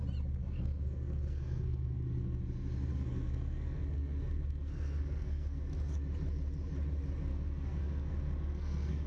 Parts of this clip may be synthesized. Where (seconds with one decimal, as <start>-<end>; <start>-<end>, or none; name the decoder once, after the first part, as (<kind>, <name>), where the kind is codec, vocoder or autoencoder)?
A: 0.4-2.4 (codec, SNAC); 2.9-5.6; 7.3-9.1

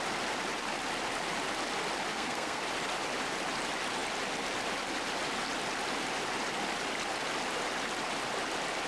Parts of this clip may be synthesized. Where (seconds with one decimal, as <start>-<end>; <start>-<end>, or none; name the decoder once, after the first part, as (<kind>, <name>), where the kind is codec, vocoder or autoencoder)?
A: 2.1-2.6 (codec, SNAC)

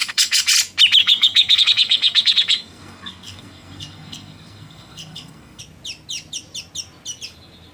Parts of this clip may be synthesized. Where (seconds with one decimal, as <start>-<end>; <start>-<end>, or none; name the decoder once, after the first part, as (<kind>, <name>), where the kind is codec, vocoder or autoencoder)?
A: 0.0-0.5 (codec, SNAC); 1.0-5.6

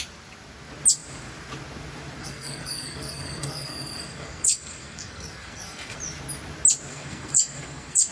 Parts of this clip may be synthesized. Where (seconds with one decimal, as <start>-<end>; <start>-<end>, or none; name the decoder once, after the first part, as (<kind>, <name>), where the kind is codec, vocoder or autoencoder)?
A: 2.2-6.0 (codec, SNAC); 6.9-8.1

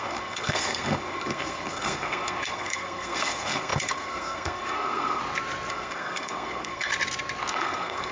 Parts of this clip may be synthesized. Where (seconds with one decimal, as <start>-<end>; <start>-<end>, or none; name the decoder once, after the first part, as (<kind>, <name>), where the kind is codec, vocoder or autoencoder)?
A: 0.0-5.2 (codec, SNAC); 5.7-6.9; 7.5-8.1

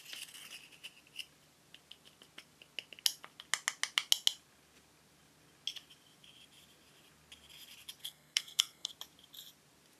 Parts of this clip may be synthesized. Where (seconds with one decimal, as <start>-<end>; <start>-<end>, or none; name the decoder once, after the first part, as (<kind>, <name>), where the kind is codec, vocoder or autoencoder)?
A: 8.0-8.9 (codec, SNAC)

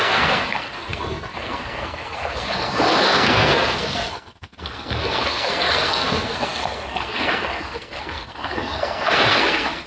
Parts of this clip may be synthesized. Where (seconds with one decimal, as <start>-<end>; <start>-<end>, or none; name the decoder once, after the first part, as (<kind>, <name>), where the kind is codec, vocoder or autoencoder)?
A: 0.0-9.9 (codec, SNAC)

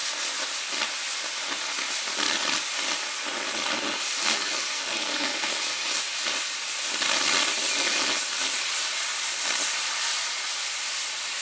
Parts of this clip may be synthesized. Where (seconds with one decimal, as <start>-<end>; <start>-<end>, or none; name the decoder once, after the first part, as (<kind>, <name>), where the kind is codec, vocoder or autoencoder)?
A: 4.2-5.8 (codec, SNAC)